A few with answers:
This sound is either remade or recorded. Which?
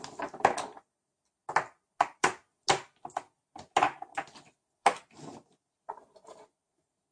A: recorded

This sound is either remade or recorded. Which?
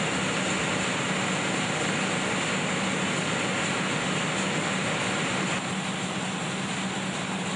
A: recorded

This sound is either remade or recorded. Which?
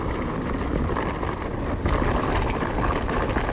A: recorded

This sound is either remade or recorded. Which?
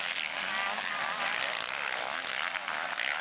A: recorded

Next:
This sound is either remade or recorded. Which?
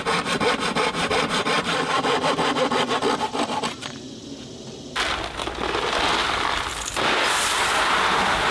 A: recorded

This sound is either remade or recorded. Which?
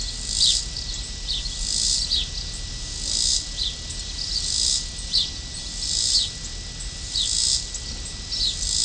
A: recorded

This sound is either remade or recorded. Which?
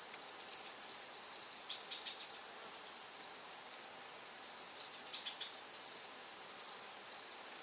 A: recorded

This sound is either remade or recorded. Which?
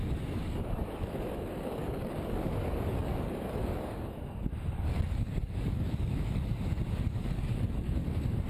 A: remade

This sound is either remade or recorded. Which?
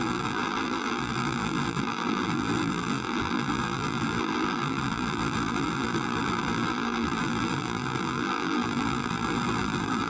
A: remade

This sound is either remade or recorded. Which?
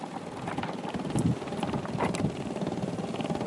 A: recorded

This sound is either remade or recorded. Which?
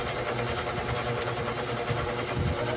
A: recorded